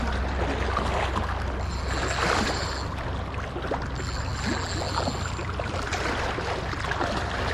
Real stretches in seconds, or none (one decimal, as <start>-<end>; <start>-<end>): 0.0-7.5